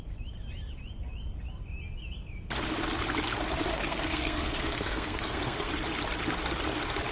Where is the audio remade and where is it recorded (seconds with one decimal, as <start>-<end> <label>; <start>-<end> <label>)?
0.0-3.7 recorded; 3.7-5.7 remade; 5.7-7.1 recorded